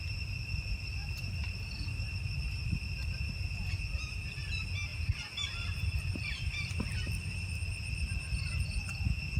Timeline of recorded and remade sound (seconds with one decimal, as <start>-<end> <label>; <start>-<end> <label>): 0.0-4.9 recorded; 4.9-8.6 remade; 8.6-9.4 recorded